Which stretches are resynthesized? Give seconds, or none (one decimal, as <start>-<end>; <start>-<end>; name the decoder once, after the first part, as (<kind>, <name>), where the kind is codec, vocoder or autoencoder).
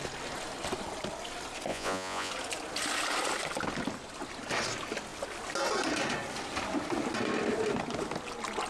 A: 1.7-2.3 (vocoder, Vocos)